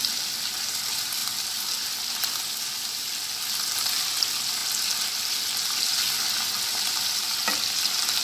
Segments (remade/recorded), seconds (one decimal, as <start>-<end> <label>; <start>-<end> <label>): 0.0-8.2 recorded